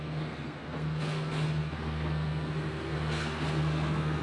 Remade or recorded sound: remade